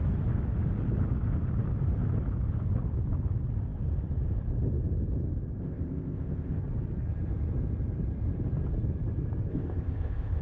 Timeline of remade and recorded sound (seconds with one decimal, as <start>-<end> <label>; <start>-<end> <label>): 0.0-5.6 recorded; 5.6-6.6 remade; 6.6-9.5 recorded; 9.5-10.4 remade